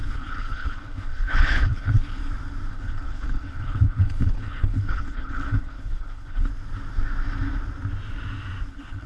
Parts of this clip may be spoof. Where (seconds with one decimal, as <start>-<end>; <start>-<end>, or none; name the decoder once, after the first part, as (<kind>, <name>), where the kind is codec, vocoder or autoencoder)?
0.0-2.2 (codec, HILCodec); 2.7-6.5; 8.7-9.1